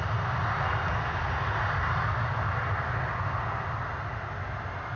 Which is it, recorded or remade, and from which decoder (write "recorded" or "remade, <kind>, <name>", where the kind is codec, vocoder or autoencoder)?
recorded